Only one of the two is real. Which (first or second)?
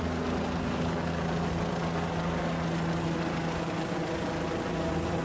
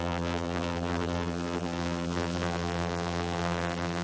first